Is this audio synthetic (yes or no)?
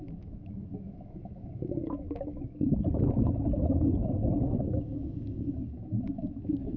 yes